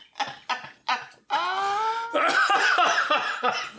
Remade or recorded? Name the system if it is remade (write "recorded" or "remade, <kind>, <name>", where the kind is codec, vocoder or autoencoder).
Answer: recorded